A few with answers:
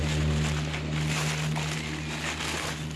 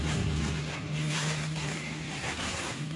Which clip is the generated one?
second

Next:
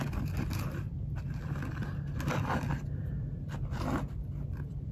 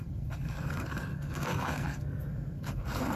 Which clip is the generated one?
second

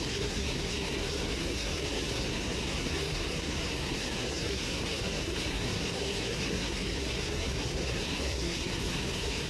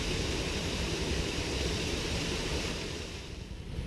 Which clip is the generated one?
first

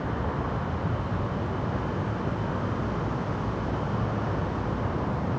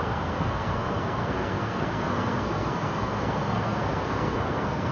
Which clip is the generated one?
second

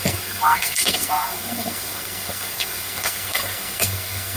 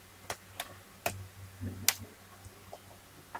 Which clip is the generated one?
first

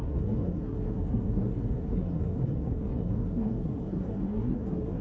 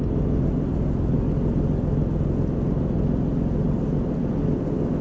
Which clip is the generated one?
first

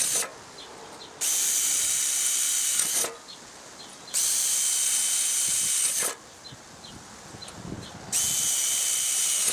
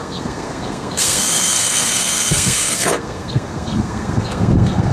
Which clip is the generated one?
second